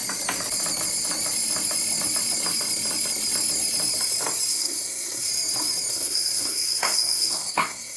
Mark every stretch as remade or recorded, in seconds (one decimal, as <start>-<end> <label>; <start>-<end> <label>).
0.0-4.5 recorded; 4.5-5.3 remade; 5.3-5.9 recorded; 5.9-8.0 remade